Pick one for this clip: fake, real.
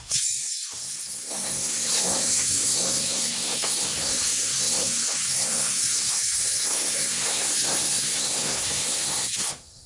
fake